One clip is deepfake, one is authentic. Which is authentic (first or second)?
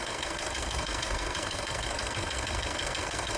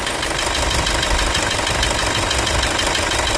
second